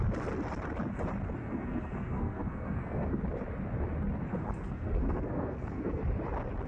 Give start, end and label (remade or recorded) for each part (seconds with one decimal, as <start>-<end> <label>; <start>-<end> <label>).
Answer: 0.0-1.4 recorded; 1.4-3.2 remade; 3.2-4.3 recorded; 4.3-6.0 remade; 6.0-6.7 recorded